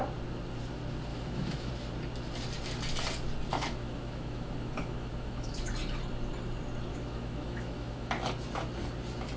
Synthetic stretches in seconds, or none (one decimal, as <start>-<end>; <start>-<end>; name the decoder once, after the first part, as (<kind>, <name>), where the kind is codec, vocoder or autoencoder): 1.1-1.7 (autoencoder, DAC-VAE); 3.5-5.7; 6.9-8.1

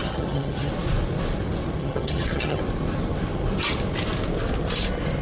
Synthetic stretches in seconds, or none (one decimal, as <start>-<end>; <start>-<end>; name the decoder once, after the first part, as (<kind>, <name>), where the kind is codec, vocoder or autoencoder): 0.0-0.7 (vocoder, HiFi-GAN); 1.8-2.6

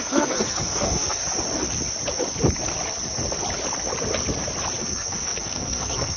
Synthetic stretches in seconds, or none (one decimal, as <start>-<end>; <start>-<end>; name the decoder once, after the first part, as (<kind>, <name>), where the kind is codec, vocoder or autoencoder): 0.0-1.2 (codec, SNAC); 4.8-6.2

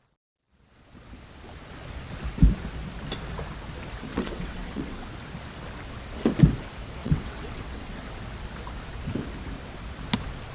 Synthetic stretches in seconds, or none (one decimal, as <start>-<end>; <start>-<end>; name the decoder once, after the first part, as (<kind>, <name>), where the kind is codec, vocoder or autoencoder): 4.1-5.1 (vocoder, WaveNeXt); 7.0-8.1

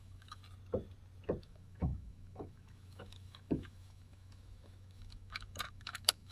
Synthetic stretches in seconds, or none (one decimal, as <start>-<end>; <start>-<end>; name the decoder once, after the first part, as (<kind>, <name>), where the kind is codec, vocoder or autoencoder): 0.0-0.4 (autoencoder, DAC-VAE); 1.4-6.3